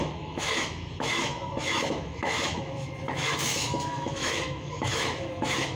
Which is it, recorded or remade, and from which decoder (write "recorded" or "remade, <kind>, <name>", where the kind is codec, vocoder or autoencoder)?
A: remade, autoencoder, DAC-VAE